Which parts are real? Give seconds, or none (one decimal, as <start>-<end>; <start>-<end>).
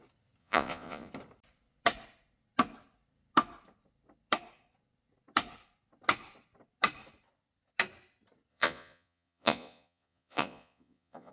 0.0-0.4; 1.1-8.5